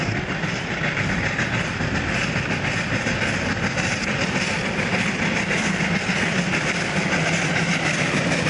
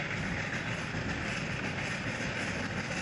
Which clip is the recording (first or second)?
first